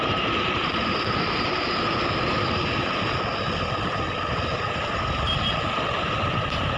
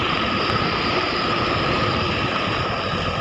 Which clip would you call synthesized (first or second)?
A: second